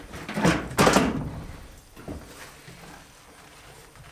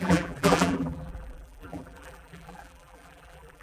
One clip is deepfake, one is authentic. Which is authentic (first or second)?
first